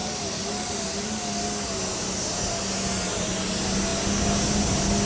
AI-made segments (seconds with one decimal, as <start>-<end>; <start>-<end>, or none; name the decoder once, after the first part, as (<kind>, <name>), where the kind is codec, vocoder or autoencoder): none